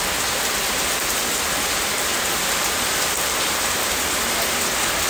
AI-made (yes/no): no